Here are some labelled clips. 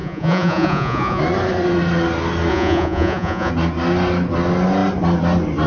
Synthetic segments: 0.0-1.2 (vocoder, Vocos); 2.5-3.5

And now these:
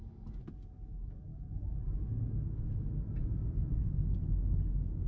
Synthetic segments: none

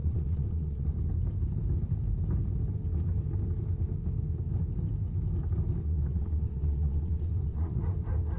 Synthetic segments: 0.0-0.9 (vocoder, WaveNeXt); 5.8-7.8

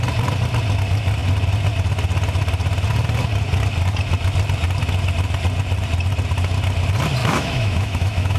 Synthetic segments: 7.2-8.4 (autoencoder, DAC-VAE)

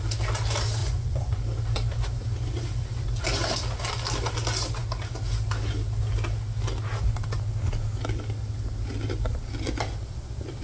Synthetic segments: 0.8-1.4 (vocoder, Vocos)

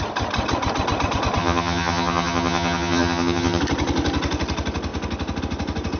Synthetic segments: 1.4-3.6 (vocoder, HiFi-GAN)

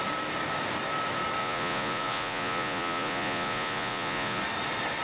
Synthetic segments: 1.4-4.4 (vocoder, Vocos)